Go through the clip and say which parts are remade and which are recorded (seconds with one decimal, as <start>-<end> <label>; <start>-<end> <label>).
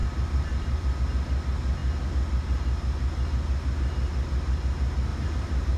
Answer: 0.0-1.0 remade; 1.0-5.1 recorded; 5.1-5.8 remade